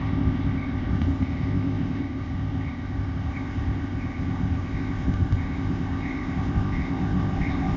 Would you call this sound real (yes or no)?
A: no